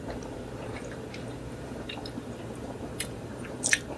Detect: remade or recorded remade